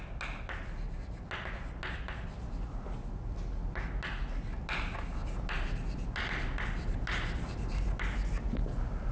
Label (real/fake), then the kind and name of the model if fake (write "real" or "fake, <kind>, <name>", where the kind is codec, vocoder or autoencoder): real